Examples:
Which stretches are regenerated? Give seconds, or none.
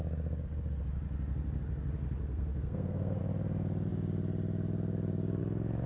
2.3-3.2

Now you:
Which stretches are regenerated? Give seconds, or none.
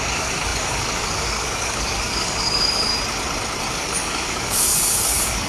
0.0-2.9; 3.7-5.5